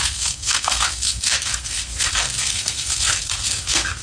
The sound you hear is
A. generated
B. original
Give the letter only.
A